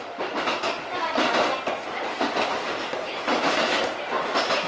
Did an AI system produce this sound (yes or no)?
no